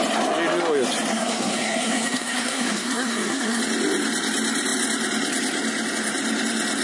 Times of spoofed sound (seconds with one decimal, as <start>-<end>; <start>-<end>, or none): 1.1-3.6